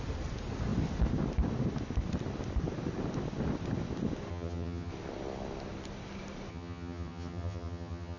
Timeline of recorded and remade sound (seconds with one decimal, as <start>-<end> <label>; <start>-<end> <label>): 0.0-4.3 recorded; 4.3-4.9 remade; 4.9-6.5 recorded; 6.5-8.2 remade